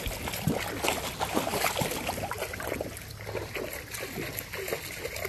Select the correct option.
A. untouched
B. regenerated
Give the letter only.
A